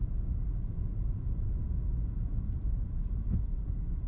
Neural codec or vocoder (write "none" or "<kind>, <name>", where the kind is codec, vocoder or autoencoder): vocoder, Vocos